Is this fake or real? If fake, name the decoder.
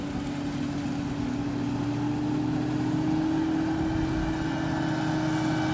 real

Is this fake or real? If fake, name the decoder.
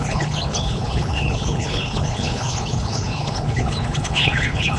fake, codec, HILCodec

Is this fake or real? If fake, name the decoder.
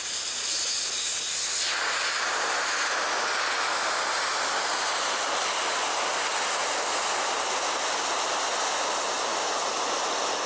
real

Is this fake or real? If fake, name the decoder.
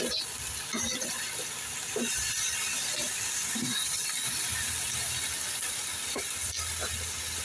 real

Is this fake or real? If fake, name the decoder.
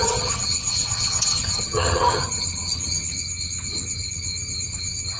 fake, vocoder, HiFi-GAN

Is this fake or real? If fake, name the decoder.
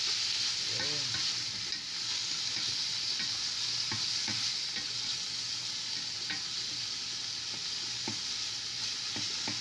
real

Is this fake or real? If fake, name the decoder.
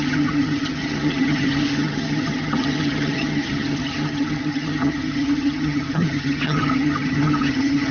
fake, vocoder, HiFi-GAN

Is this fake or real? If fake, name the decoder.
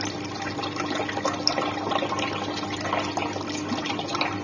real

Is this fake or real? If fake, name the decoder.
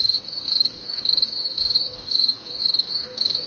fake, codec, DAC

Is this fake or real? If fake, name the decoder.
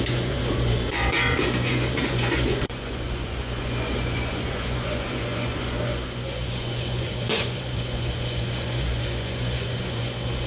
fake, vocoder, Vocos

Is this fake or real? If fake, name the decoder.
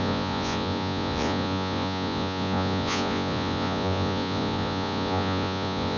fake, vocoder, Vocos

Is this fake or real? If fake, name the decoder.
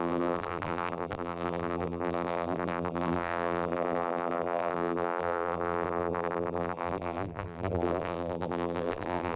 fake, vocoder, BigVGAN v2